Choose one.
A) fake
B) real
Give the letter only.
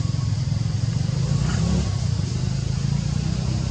B